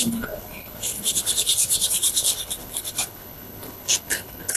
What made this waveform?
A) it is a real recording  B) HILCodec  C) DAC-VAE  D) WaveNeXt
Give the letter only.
B